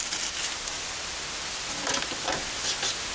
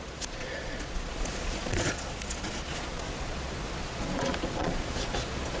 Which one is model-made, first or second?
second